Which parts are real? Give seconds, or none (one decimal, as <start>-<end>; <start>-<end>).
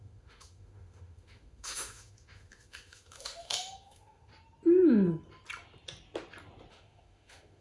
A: 4.3-6.7